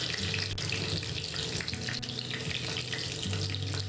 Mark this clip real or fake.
real